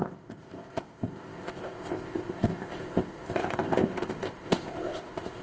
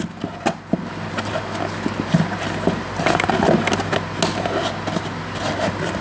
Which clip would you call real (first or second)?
second